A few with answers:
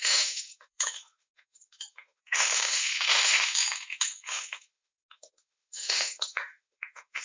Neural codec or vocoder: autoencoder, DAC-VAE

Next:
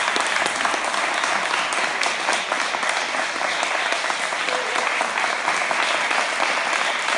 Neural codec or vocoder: none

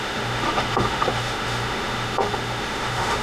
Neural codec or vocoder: autoencoder, DAC-VAE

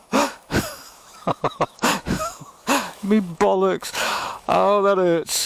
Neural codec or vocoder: autoencoder, DAC-VAE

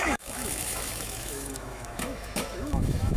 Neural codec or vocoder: autoencoder, DAC-VAE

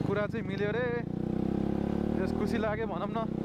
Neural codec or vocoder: none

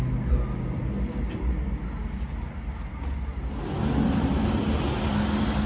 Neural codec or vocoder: none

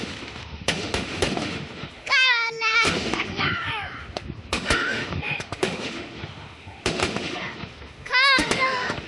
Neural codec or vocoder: autoencoder, DAC-VAE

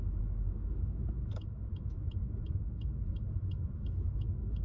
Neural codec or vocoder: autoencoder, DAC-VAE